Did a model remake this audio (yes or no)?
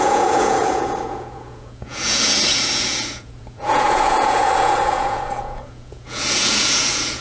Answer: yes